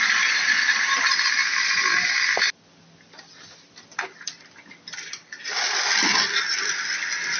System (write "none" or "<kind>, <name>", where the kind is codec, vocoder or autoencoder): none